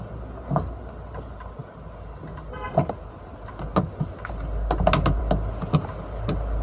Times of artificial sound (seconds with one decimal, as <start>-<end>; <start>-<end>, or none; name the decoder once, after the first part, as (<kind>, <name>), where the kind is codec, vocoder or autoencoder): none